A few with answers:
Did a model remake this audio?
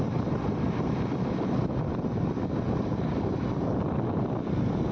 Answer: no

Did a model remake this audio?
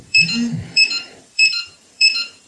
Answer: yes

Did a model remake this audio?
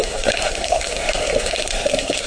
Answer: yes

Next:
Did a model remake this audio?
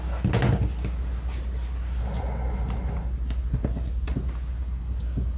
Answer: no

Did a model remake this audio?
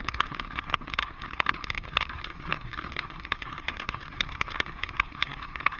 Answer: yes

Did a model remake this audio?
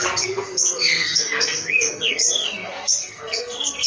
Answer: yes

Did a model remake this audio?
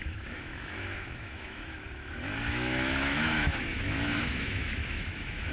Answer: yes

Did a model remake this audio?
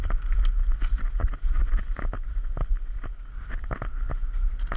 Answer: no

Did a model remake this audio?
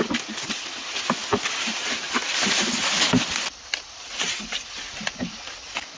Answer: yes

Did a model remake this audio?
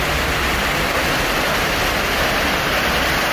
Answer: no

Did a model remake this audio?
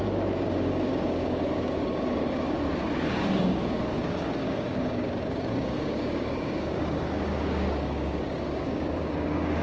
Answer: yes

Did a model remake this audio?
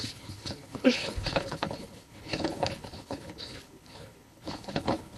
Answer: yes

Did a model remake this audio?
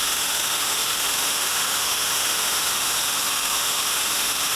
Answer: yes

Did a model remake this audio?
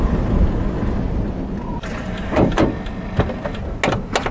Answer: no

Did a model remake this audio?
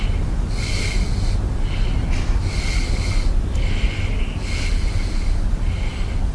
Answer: no